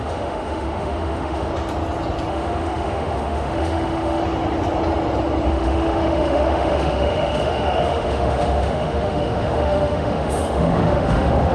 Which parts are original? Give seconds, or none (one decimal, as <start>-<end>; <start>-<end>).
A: 1.5-2.3; 4.2-5.5